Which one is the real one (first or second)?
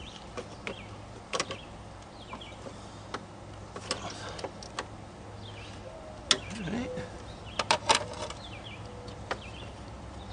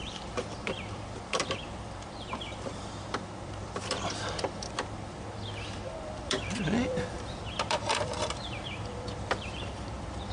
first